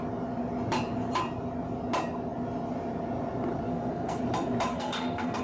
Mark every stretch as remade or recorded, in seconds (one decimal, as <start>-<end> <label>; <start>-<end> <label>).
0.0-3.7 recorded; 3.7-4.2 remade; 4.2-4.7 recorded; 4.7-5.4 remade